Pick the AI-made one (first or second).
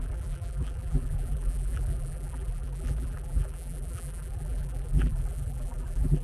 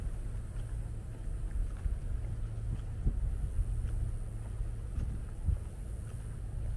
first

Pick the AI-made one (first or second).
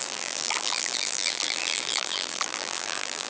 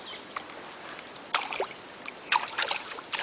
first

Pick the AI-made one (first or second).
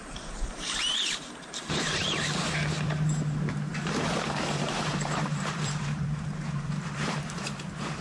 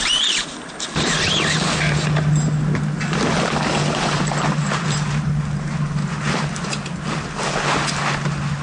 first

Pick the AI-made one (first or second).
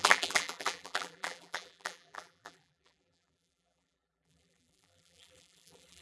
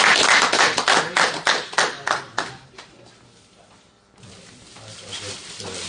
first